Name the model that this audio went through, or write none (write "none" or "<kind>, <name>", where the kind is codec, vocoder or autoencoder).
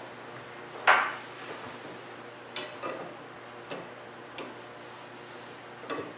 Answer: none